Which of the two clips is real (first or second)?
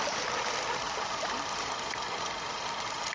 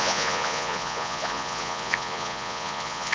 first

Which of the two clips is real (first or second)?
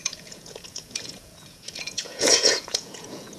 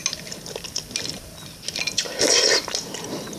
second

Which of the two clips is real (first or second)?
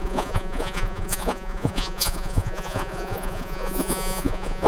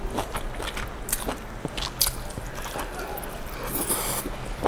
second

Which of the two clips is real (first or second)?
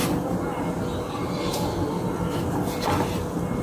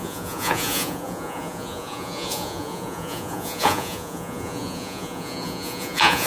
first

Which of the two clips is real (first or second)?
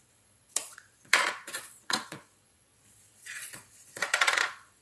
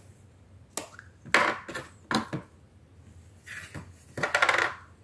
second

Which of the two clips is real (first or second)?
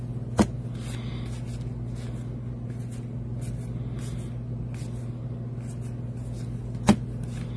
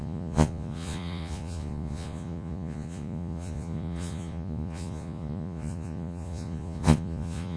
first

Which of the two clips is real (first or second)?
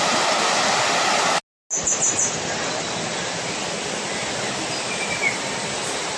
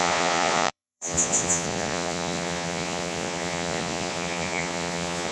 first